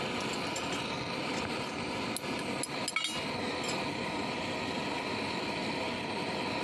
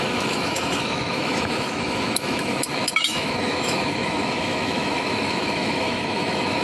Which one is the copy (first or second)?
second